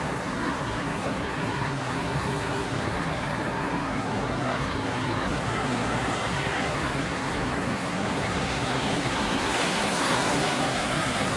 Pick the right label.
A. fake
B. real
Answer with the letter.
A